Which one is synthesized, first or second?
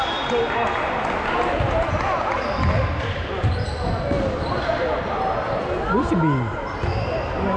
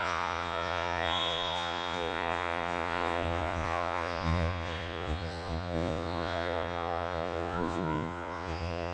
second